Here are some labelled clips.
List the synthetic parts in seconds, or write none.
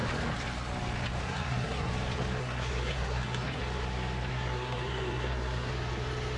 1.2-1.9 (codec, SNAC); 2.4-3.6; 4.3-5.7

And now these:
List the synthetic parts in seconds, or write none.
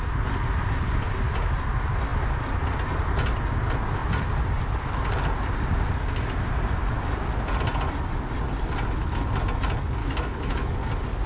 10.0-10.8 (autoencoder, DAC-VAE)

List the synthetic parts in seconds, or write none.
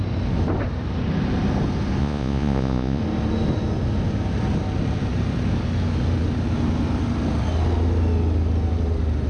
2.0-3.0 (vocoder, Vocos)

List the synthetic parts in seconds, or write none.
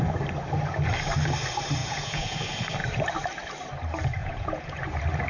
1.8-2.4 (vocoder, Vocos); 4.2-4.8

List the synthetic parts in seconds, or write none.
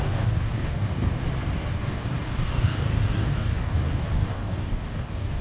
0.0-1.2 (codec, DAC); 1.7-5.4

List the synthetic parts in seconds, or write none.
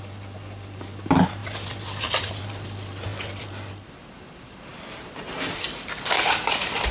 1.4-2.3 (vocoder, BigVGAN v2); 4.7-5.2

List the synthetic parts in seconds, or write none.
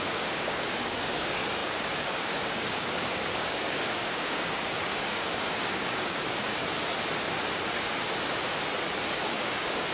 0.0-6.6 (codec, DAC); 9.1-9.9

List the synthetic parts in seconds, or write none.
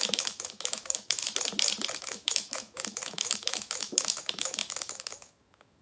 0.0-1.2 (autoencoder, DAC-VAE); 2.0-5.8